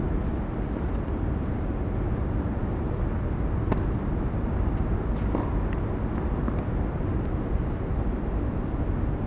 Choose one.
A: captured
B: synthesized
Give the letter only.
A